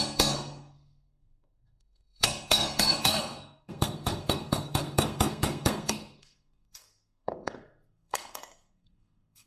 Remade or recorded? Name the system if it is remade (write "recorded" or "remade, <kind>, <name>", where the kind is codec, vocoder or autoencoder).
remade, codec, SNAC